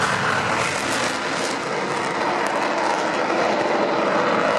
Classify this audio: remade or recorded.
recorded